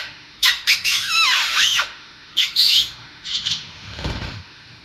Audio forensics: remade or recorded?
remade